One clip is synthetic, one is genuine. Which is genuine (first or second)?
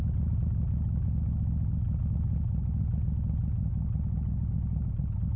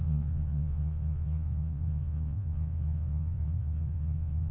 first